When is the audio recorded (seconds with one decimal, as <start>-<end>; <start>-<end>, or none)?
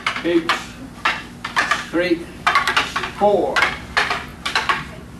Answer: 0.5-3.6